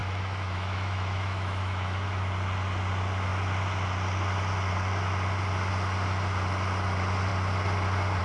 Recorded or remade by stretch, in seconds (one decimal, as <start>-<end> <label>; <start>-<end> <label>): 0.0-2.2 remade; 2.2-8.2 recorded